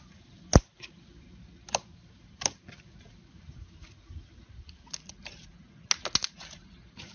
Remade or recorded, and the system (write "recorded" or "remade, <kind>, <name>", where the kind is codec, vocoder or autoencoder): recorded